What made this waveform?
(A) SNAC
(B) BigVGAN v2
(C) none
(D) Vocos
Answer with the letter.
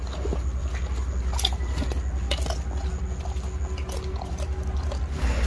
C